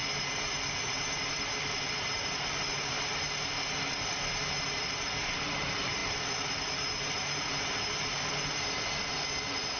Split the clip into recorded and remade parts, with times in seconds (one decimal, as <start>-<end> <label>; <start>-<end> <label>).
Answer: 0.0-9.8 recorded